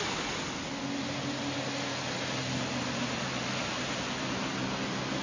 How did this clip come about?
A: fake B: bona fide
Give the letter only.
B